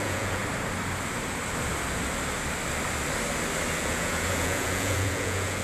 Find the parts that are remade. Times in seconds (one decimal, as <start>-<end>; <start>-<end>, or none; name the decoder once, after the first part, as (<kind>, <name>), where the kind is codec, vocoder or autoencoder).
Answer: 0.0-0.4 (vocoder, Vocos); 3.8-5.6